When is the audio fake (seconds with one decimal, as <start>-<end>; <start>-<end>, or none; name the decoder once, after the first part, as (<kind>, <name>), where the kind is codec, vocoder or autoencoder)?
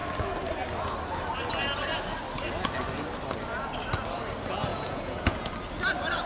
4.7-5.5 (vocoder, Vocos)